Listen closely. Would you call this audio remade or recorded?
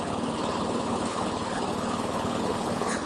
remade